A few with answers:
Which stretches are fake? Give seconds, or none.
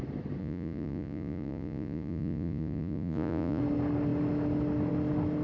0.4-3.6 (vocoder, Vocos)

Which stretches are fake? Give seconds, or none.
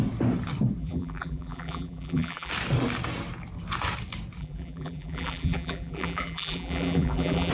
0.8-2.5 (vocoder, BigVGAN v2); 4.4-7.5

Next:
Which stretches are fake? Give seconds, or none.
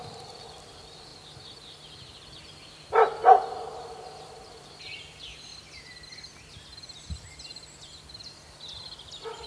0.0-1.1 (vocoder, BigVGAN v2); 3.8-5.5; 6.4-9.5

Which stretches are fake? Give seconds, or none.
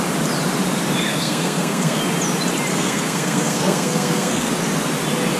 1.1-2.0 (codec, SNAC); 2.7-4.5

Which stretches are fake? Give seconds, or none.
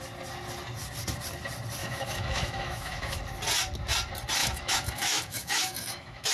1.8-3.2 (autoencoder, DAC-VAE); 4.4-6.3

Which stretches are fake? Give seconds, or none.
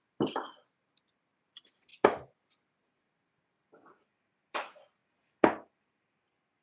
0.0-1.9 (vocoder, BigVGAN v2); 2.4-5.0; 5.9-6.6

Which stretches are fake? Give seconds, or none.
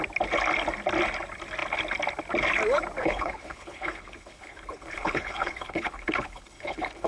3.0-7.1 (codec, HILCodec)